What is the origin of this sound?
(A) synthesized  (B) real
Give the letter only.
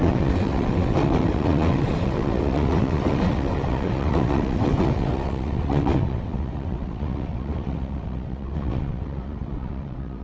A